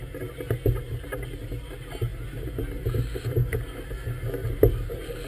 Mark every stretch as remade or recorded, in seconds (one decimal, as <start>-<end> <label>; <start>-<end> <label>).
0.0-5.3 recorded